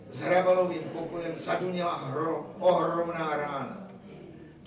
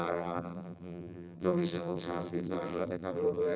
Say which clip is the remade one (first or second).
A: second